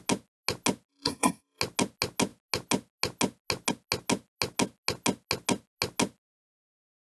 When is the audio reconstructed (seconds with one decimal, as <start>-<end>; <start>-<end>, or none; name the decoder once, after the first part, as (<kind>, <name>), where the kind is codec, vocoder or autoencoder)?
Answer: 0.9-1.6 (codec, SNAC)